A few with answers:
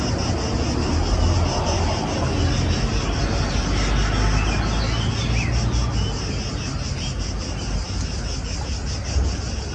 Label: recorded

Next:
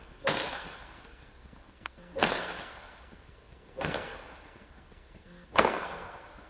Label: remade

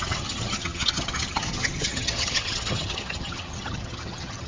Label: remade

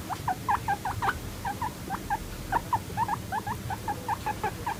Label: recorded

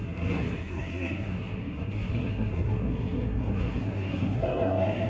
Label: remade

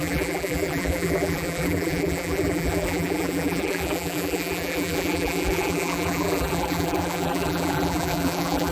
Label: remade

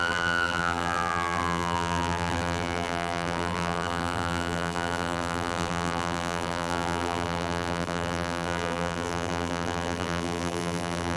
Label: remade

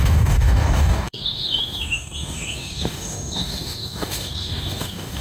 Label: remade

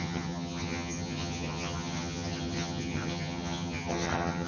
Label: remade